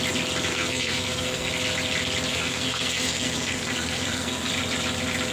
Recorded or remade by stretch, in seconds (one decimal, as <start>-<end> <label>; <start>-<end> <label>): 0.0-0.5 recorded; 0.5-1.5 remade; 1.5-2.3 recorded; 2.3-4.5 remade; 4.5-5.3 recorded